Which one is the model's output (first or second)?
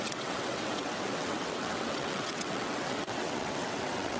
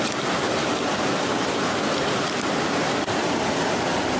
first